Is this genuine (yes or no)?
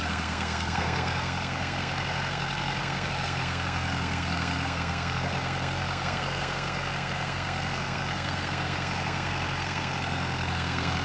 no